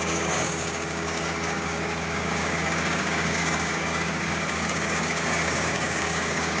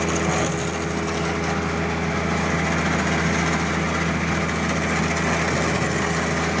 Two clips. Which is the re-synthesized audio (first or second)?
first